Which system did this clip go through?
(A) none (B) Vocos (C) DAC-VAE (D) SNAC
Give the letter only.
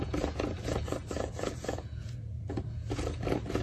B